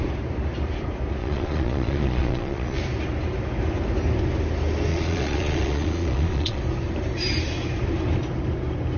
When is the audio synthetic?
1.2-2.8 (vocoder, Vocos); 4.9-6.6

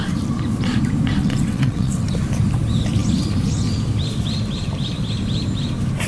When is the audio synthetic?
1.2-1.9 (vocoder, WaveNeXt)

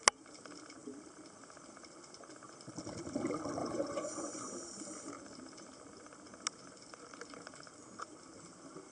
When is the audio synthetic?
3.6-4.5 (vocoder, Vocos)